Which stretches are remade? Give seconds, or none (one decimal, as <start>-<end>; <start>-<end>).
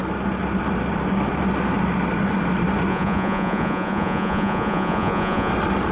2.9-5.5